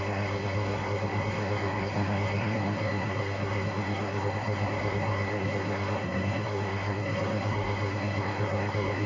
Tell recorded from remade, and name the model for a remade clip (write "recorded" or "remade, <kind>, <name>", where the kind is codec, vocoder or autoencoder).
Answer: remade, codec, SNAC